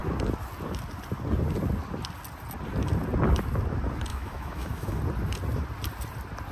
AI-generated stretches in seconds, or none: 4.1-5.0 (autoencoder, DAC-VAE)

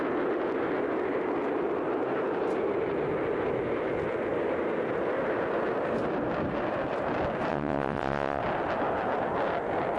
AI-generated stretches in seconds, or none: 7.5-8.4 (vocoder, WaveNeXt)

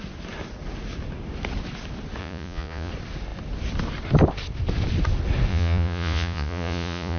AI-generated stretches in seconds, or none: 2.2-2.9 (vocoder, Vocos); 5.5-7.2

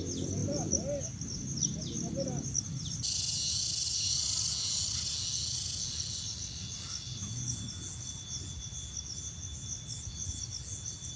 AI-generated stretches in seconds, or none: none

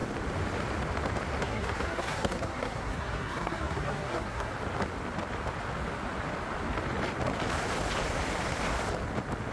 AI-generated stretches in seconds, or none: 1.4-4.5 (codec, SNAC)

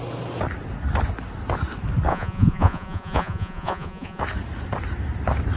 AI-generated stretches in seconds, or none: 2.1-4.2 (vocoder, Vocos)

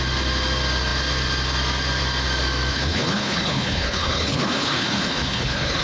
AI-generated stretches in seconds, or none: 2.7-5.8 (codec, HILCodec)